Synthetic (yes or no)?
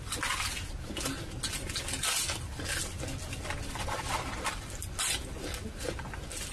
no